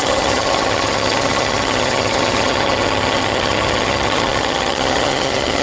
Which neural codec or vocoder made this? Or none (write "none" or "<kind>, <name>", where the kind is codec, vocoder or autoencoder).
vocoder, HiFi-GAN